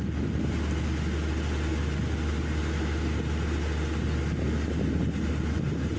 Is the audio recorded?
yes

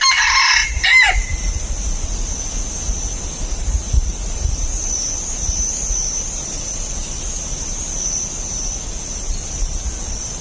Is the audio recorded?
yes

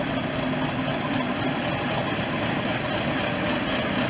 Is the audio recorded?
yes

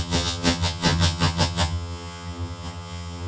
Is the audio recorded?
no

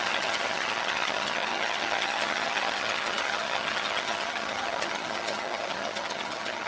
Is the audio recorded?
no